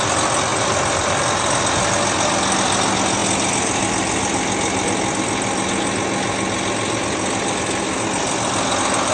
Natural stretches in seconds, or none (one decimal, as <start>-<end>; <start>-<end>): 0.0-0.5; 1.6-9.1